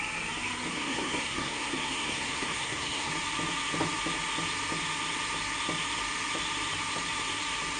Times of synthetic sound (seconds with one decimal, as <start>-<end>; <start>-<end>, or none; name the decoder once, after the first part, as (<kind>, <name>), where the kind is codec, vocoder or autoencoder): 0.7-3.1 (codec, SNAC)